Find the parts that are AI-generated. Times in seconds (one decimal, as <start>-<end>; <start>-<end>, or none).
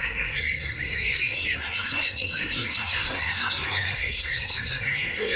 0.0-5.4